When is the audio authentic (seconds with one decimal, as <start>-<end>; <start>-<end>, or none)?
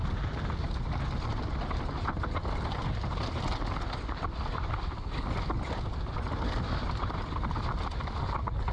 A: 0.0-8.7